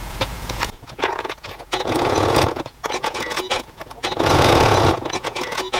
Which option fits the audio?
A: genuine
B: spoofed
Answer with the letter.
B